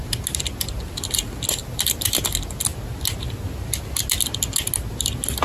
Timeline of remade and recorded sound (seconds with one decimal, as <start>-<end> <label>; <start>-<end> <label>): 0.0-1.6 recorded; 1.6-2.2 remade; 2.2-5.4 recorded